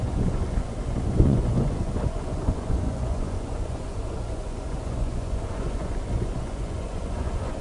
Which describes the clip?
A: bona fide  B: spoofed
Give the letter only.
B